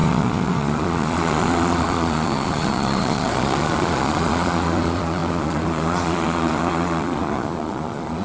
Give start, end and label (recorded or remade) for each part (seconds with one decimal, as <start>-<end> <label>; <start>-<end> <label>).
0.0-8.2 remade